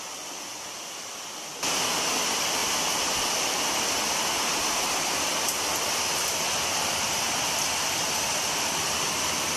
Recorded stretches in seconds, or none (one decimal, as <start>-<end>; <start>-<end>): 0.0-9.6